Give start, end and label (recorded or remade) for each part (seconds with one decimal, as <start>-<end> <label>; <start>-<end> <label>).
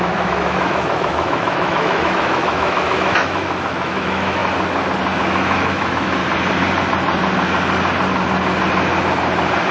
0.0-4.4 remade; 4.4-5.2 recorded; 5.2-6.2 remade; 6.2-9.7 recorded